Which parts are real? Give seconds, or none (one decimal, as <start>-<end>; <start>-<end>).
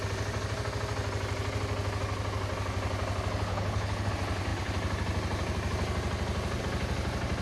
0.0-3.5; 4.1-7.4